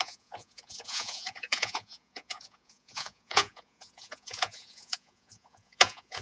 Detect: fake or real fake